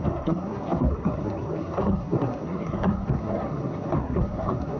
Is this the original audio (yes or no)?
no